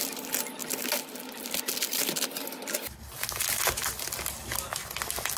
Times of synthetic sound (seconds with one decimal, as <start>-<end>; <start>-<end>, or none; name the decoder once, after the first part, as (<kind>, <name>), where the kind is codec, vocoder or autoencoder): none